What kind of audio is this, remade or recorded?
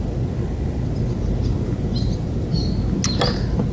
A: recorded